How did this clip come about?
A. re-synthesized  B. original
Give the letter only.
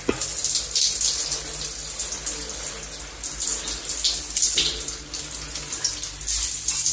B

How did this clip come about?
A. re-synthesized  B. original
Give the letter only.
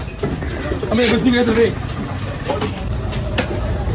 A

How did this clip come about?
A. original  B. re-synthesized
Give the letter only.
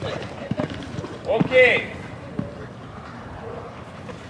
B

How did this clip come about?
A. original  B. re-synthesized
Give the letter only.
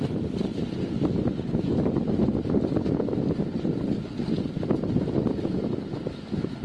A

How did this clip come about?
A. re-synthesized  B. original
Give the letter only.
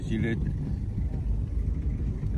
A